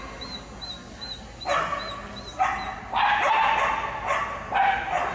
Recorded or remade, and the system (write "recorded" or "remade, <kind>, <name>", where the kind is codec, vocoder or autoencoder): recorded